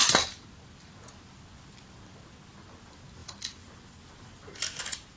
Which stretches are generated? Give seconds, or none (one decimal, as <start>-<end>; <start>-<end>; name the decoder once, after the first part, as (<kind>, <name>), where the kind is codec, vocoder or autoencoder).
none